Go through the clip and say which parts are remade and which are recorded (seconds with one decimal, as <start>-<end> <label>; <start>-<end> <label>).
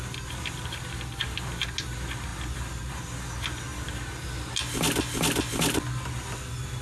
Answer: 0.0-6.8 recorded